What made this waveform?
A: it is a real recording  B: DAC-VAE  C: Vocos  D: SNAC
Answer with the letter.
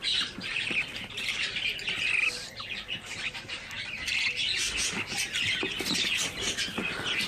A